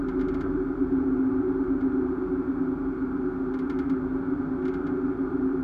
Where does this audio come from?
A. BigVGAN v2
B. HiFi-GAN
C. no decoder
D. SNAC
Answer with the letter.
C